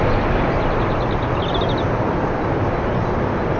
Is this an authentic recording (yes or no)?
yes